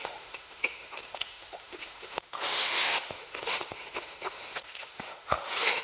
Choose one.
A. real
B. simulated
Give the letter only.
B